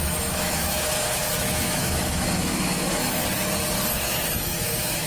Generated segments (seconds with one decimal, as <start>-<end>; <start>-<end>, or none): 0.0-3.2; 4.0-5.1